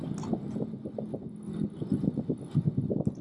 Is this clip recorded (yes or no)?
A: yes